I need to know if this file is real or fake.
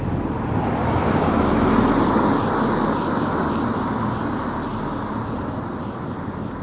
real